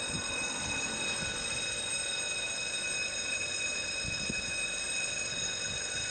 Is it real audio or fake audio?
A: real